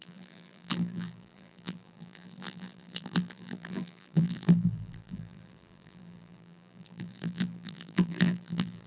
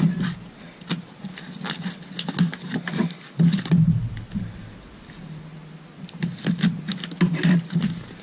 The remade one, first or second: first